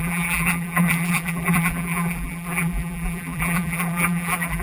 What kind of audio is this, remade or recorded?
remade